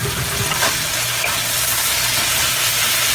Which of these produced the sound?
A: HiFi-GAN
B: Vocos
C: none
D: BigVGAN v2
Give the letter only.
C